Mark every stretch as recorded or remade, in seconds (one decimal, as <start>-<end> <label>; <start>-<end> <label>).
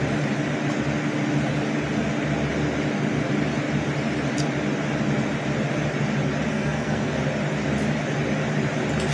0.0-6.5 recorded; 6.5-7.1 remade; 7.1-9.1 recorded